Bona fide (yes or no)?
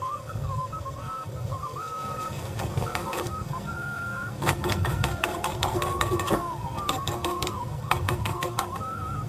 no